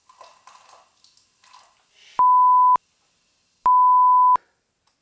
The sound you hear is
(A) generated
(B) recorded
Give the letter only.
B